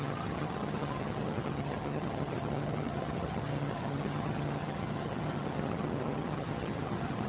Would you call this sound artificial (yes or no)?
yes